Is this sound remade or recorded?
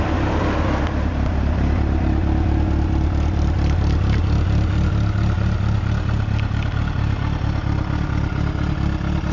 recorded